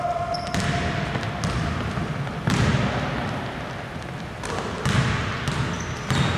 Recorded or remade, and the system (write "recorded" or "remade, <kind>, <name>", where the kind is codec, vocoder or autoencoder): recorded